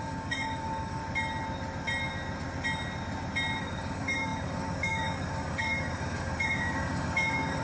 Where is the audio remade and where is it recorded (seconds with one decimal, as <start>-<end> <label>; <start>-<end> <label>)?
0.0-1.0 remade; 1.0-3.6 recorded; 3.6-7.6 remade